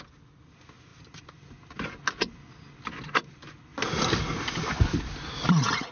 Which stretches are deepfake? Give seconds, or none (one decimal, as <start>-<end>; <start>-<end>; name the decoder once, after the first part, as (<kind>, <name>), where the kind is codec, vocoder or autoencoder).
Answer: none